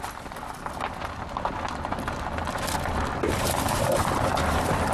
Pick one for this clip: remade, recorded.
recorded